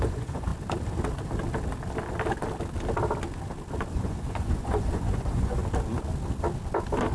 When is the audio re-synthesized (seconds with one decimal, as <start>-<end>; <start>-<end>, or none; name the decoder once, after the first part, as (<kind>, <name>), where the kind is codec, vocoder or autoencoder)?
0.0-0.5 (vocoder, Vocos); 3.9-5.6